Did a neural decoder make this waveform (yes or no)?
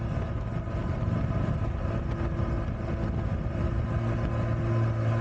no